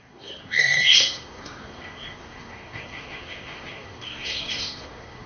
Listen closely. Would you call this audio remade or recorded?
remade